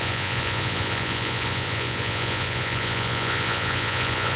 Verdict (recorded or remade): remade